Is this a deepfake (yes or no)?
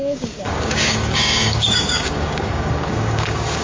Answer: yes